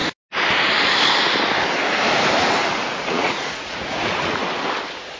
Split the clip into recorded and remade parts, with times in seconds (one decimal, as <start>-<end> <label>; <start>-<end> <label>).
0.0-2.9 recorded; 2.9-4.4 remade; 4.4-5.2 recorded